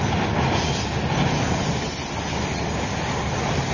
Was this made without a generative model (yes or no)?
yes